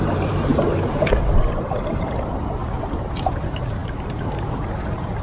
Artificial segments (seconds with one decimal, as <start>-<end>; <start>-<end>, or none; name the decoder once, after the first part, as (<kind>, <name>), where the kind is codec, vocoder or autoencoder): 0.0-2.6 (vocoder, BigVGAN v2); 3.3-5.2